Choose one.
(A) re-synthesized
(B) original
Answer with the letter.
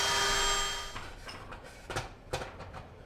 B